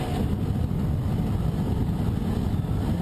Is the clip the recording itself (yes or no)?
yes